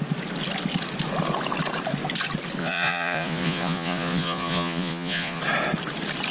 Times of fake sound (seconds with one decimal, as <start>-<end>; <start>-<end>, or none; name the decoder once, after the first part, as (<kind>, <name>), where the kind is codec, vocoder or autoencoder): 2.6-5.4 (vocoder, Vocos)